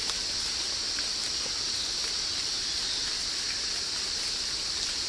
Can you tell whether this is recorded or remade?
recorded